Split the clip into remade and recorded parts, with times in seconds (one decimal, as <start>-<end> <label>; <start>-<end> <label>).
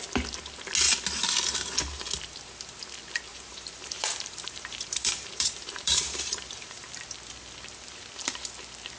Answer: 0.0-3.3 recorded; 3.3-7.0 remade; 7.0-9.0 recorded